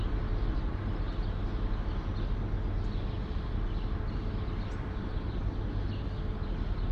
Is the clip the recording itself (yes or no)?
yes